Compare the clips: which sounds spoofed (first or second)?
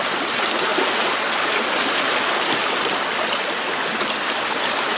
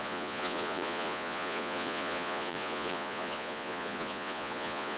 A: second